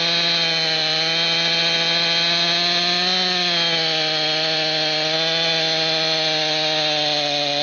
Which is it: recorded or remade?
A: recorded